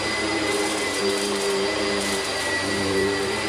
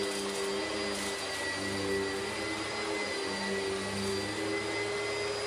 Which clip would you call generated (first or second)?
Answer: first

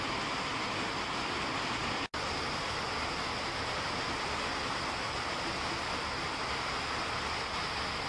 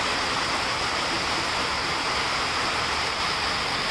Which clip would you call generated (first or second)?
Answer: second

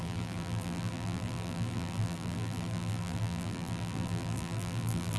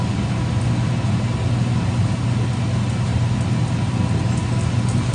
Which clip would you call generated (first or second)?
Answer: first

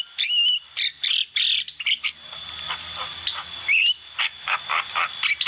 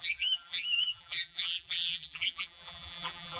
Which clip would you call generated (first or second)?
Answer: second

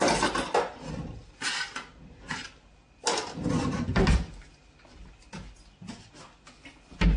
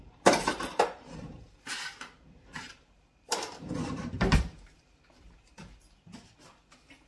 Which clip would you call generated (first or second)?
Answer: second